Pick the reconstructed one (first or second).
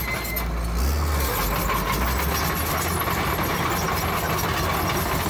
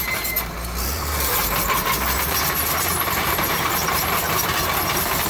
second